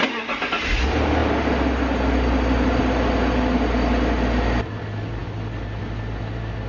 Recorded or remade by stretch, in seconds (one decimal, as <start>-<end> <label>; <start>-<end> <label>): 0.0-6.7 recorded